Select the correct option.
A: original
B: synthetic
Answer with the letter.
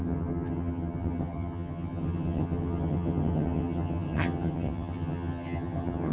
B